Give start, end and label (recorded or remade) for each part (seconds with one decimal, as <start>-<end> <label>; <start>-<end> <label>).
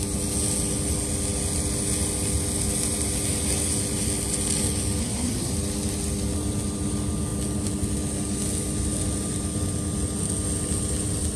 0.0-5.0 recorded; 5.0-5.5 remade; 5.5-11.4 recorded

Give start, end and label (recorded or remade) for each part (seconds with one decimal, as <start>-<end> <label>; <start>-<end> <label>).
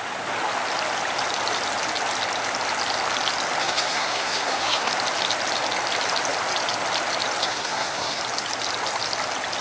0.0-3.6 recorded; 3.6-4.9 remade; 4.9-7.4 recorded; 7.4-8.2 remade; 8.2-9.6 recorded